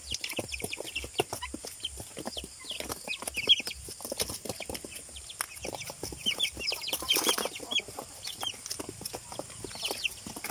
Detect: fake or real real